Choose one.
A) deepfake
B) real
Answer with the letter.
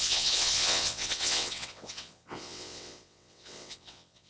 A